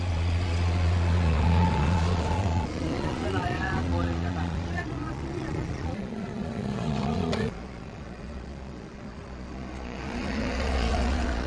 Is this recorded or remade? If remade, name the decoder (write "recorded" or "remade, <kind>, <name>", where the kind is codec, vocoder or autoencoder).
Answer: remade, vocoder, Vocos